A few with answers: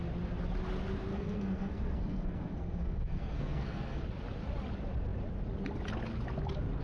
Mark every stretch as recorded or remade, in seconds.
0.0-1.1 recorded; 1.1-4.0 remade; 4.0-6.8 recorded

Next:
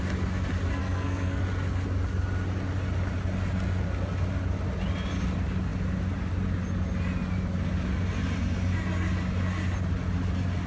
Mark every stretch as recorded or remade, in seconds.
0.0-0.8 recorded; 0.8-1.4 remade; 1.4-10.7 recorded